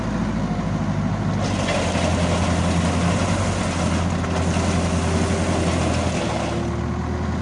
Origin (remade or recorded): recorded